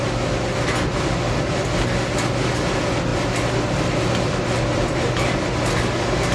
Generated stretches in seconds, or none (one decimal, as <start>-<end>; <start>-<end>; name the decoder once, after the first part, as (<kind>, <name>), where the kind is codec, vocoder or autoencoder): none